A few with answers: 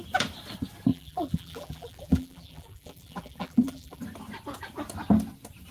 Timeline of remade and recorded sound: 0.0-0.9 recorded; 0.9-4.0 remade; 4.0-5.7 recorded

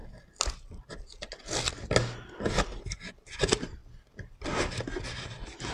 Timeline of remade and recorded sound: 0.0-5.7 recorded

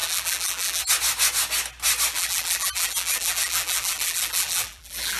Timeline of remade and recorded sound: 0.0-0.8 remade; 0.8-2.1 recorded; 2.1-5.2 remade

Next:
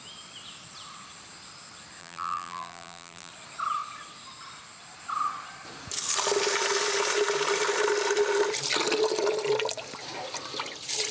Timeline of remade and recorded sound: 0.0-2.0 recorded; 2.0-3.3 remade; 3.3-11.1 recorded

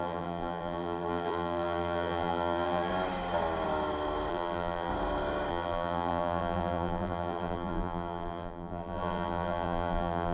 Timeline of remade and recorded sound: 0.0-2.9 remade; 2.9-4.3 recorded; 4.3-4.9 remade; 4.9-5.5 recorded; 5.5-10.3 remade

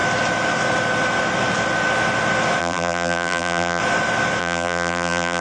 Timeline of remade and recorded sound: 0.0-2.6 recorded; 2.6-3.8 remade; 3.8-4.4 recorded; 4.4-5.4 remade